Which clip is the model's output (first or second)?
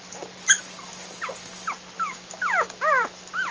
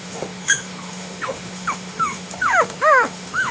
second